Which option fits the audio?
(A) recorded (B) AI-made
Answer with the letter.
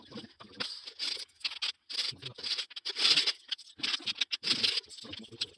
A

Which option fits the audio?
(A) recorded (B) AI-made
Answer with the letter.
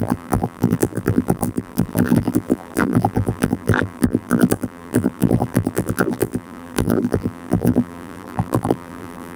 B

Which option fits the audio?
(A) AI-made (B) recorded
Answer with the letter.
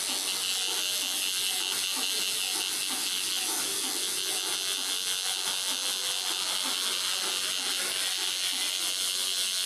B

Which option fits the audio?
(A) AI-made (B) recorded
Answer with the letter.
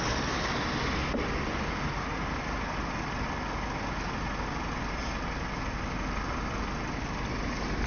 B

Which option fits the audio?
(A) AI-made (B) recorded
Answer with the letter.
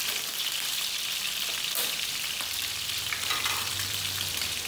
A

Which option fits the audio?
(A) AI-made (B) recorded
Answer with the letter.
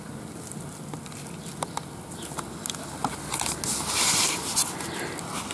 B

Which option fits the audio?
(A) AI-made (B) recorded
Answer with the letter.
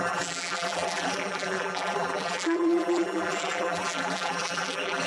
A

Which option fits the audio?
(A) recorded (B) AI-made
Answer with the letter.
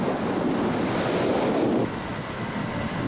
A